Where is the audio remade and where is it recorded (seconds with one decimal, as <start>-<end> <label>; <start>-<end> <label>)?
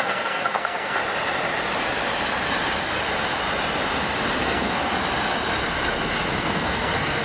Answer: 0.0-1.0 remade; 1.0-4.4 recorded; 4.4-4.9 remade; 4.9-6.4 recorded; 6.4-7.2 remade